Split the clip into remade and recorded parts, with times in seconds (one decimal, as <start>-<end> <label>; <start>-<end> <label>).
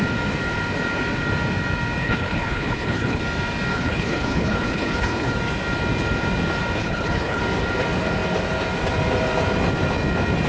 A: 0.0-2.0 recorded; 2.0-3.2 remade; 3.2-3.7 recorded; 3.7-5.3 remade; 5.3-6.8 recorded; 6.8-7.4 remade; 7.4-10.5 recorded